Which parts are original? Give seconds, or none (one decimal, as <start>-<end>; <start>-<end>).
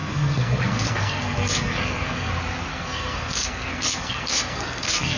2.3-2.7